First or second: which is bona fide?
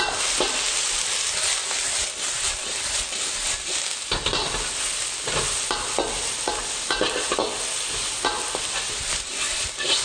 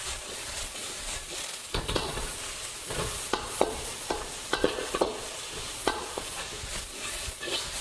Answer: first